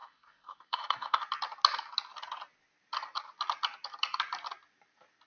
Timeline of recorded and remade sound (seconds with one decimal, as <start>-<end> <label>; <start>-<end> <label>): 0.0-1.2 remade; 1.2-5.3 recorded